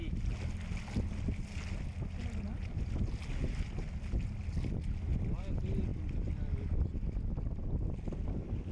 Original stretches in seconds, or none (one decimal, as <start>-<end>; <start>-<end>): 0.0-8.7